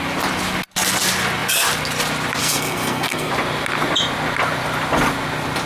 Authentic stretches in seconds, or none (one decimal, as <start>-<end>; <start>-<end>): 0.0-2.4; 3.3-5.7